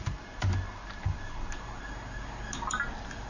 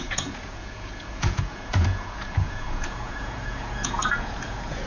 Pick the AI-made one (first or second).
second